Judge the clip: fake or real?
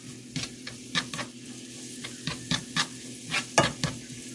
real